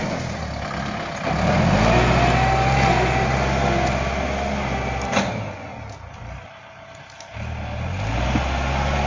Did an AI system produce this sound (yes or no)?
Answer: no